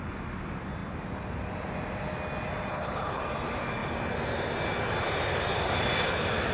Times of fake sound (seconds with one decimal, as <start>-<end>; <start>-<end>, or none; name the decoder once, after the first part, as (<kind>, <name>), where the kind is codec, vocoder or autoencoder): 2.7-3.2 (codec, HILCodec)